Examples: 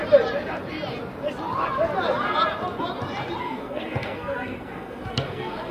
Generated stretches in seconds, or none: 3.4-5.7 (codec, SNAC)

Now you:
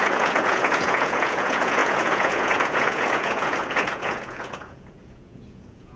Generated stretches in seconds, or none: 0.0-6.0 (vocoder, Vocos)